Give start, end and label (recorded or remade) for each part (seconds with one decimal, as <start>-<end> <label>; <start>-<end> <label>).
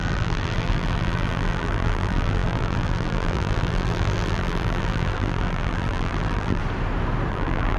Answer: 0.0-6.6 remade; 6.6-7.3 recorded; 7.3-7.8 remade